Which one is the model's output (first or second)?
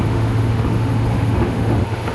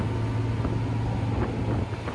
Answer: first